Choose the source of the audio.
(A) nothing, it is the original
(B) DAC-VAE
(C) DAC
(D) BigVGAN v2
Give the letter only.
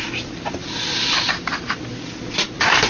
A